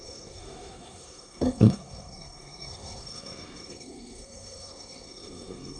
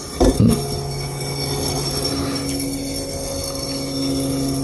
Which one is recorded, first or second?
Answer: second